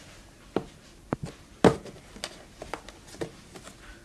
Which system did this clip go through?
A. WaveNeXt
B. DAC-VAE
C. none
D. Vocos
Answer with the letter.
C